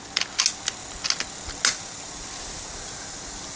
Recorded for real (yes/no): yes